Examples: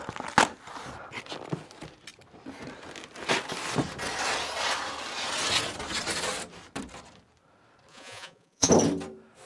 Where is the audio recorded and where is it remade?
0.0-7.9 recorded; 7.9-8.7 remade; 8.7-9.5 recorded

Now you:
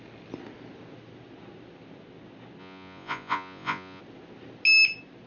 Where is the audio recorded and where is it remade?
0.0-2.6 recorded; 2.6-4.0 remade; 4.0-5.3 recorded

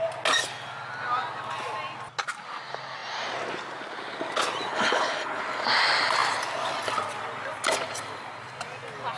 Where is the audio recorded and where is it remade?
0.0-4.7 recorded; 4.7-5.4 remade; 5.4-9.2 recorded